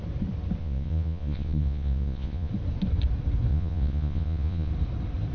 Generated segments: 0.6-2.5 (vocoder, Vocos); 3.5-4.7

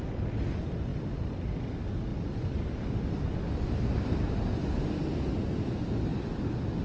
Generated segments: none

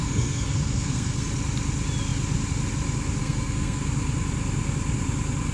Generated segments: 0.0-1.3 (codec, SNAC); 3.2-3.8